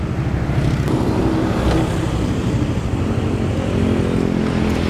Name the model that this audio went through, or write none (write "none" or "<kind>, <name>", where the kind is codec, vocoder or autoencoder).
none